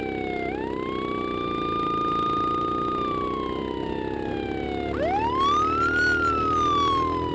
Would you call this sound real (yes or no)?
yes